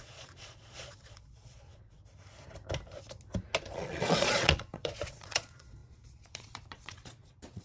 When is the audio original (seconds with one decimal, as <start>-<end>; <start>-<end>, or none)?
2.0-3.6